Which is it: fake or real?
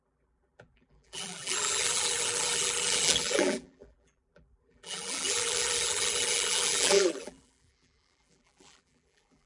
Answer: fake